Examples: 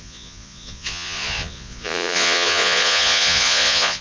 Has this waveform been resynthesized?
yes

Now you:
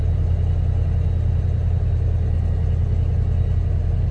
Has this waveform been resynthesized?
no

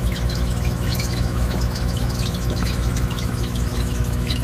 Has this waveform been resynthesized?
yes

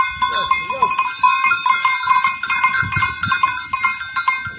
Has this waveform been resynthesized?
no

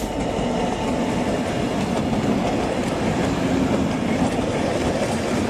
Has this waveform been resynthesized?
no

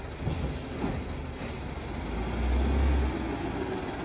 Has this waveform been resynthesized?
no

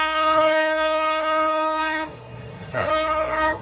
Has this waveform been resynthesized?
yes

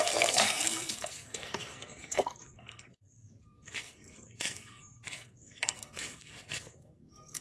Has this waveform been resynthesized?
yes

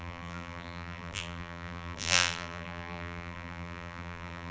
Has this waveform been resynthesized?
yes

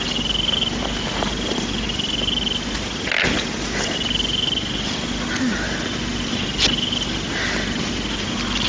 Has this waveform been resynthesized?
no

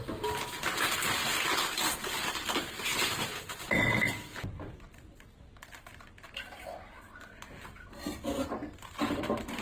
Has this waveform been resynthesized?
yes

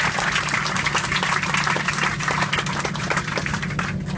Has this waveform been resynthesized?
no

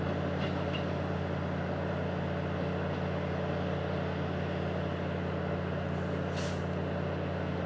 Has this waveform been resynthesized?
no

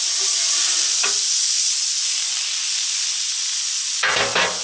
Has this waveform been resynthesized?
no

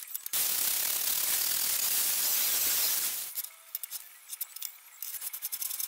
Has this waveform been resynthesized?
no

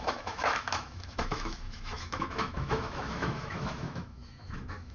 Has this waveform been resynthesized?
yes